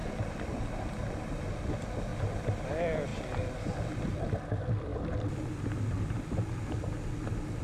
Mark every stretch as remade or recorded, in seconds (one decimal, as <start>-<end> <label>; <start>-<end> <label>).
0.0-7.6 recorded